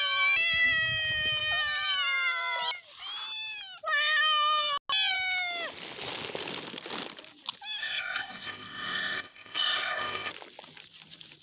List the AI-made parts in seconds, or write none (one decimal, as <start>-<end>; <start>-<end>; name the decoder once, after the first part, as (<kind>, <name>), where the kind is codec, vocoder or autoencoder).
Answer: 7.8-10.3 (codec, ZipCodec)